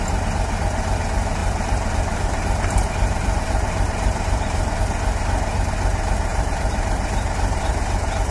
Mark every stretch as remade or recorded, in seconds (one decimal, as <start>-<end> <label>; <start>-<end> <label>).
0.0-1.4 recorded; 1.4-4.8 remade; 4.8-6.3 recorded; 6.3-7.7 remade; 7.7-8.3 recorded